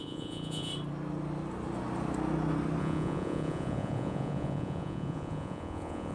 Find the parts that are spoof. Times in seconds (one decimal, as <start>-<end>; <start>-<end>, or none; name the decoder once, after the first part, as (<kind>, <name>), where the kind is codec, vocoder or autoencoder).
0.0-0.7 (vocoder, Vocos); 2.8-6.1